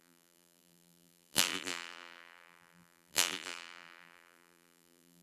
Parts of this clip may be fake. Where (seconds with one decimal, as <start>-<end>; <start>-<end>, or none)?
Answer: 0.0-5.2